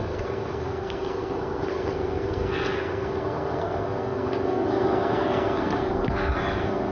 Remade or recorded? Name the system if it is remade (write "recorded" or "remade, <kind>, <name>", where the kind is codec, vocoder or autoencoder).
remade, codec, SNAC